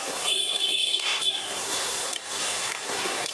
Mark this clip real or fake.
fake